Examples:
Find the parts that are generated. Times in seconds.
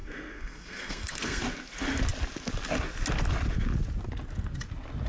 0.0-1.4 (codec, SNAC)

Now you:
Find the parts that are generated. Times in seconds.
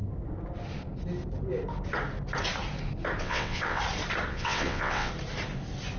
3.2-3.8 (vocoder, WaveNeXt); 4.3-5.1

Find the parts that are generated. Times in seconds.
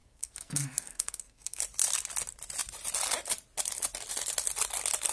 0.0-1.6 (codec, SNAC)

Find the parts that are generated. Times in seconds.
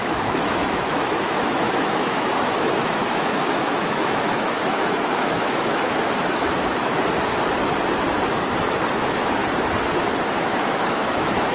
0.0-6.8 (autoencoder, DAC-VAE); 9.0-9.4; 10.4-11.5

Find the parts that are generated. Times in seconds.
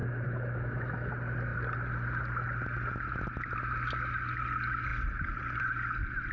0.0-1.1 (autoencoder, DAC-VAE)